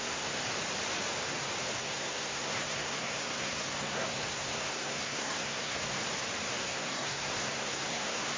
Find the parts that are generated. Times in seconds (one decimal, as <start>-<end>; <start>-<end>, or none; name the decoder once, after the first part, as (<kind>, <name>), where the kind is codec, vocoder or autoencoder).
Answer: 0.0-0.4 (codec, SNAC); 1.8-6.0; 6.6-8.4